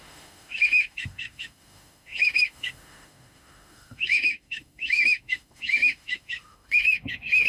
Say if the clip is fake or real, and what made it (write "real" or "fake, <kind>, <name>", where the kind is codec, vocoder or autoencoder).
fake, autoencoder, DAC-VAE